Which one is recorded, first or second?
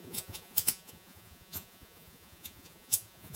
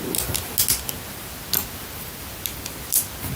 second